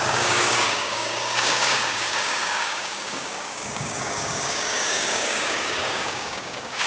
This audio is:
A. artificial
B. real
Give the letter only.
A